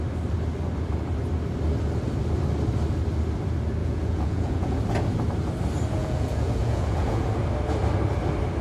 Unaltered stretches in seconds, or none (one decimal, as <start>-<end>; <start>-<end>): 0.0-3.8; 4.8-6.0; 7.3-8.6